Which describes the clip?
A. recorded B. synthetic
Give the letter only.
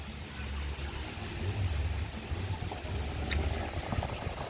A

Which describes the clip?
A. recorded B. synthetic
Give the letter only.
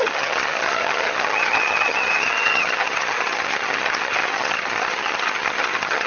B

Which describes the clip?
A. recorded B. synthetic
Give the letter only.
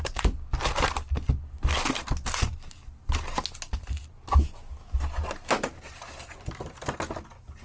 A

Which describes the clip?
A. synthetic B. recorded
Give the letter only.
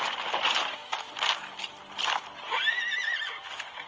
B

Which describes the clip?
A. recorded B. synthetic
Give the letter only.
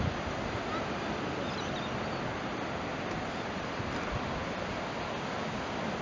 A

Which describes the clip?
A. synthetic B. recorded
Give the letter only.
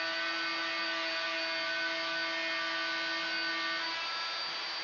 B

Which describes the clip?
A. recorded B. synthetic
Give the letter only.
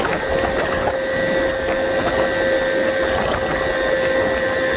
A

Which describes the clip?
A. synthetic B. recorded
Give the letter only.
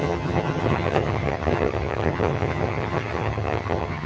A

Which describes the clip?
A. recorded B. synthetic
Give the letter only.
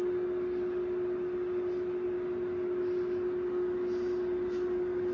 A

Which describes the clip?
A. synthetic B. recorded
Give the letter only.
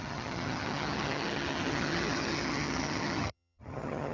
A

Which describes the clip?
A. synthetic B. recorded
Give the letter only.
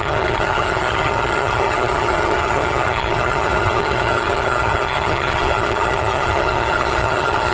A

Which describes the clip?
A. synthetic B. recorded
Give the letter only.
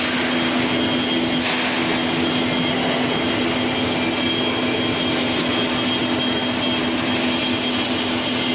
B